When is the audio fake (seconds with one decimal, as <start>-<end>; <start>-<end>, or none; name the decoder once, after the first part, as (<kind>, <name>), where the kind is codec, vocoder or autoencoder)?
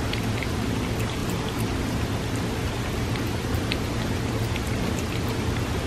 none